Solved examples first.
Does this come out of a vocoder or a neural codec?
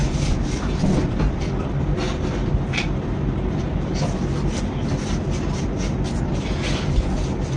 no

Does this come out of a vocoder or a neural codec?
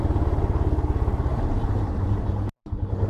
no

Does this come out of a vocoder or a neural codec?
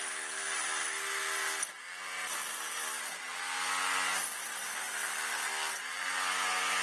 no